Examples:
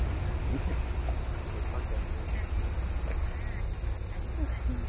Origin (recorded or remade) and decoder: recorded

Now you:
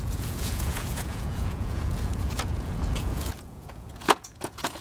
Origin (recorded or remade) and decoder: remade, vocoder, Vocos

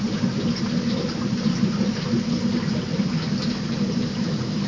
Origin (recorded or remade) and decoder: recorded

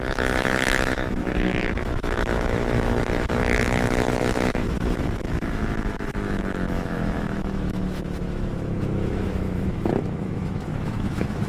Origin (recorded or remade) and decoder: remade, autoencoder, DAC-VAE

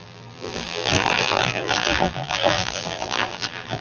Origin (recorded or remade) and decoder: remade, vocoder, BigVGAN v2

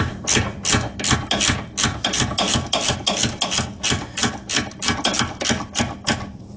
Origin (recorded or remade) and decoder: recorded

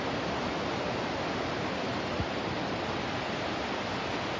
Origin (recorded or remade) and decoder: recorded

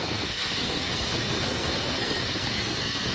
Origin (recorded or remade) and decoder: remade, codec, SNAC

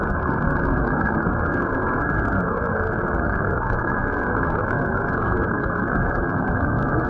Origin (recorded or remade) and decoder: remade, codec, SNAC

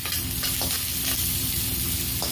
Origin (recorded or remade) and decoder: recorded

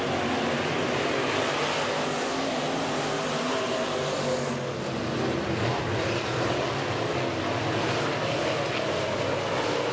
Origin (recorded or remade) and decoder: recorded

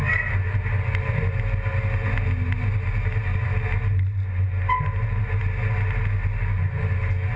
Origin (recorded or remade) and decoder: recorded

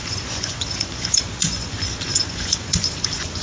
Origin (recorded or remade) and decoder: remade, vocoder, Vocos